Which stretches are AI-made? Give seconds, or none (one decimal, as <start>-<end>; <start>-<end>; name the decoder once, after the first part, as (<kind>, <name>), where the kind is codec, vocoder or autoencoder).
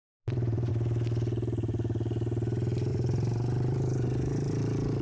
0.0-0.7 (vocoder, BigVGAN v2); 2.9-4.6